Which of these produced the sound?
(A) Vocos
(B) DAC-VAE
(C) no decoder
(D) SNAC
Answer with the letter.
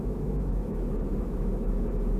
B